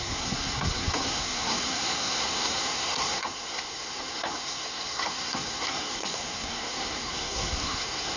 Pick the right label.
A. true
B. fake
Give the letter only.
B